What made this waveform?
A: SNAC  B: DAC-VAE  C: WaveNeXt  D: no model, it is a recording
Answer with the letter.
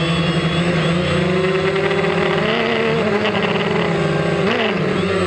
D